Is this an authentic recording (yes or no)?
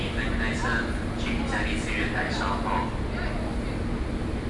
yes